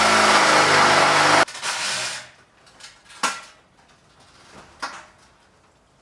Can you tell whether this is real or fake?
real